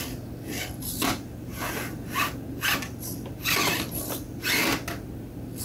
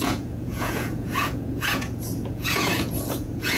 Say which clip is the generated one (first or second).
second